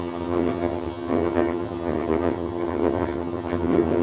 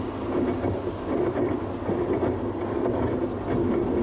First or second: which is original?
second